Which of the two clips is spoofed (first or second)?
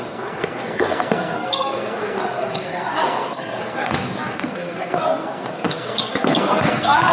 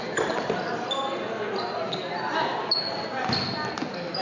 first